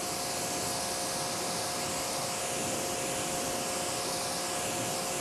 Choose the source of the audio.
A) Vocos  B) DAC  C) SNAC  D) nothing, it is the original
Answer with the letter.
D